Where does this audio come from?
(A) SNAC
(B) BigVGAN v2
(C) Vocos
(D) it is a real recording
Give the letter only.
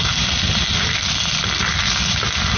D